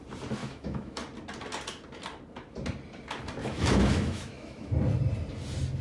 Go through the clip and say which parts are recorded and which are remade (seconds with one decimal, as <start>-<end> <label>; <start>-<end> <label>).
0.0-0.4 recorded; 0.4-1.0 remade; 1.0-3.4 recorded; 3.4-4.7 remade; 4.7-5.8 recorded